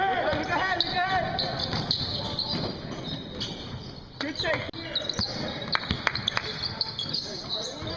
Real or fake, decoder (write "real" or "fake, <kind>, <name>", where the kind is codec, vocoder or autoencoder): real